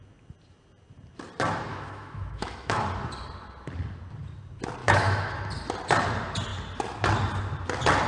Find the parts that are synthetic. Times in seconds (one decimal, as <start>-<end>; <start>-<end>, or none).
1.7-2.8; 4.8-5.4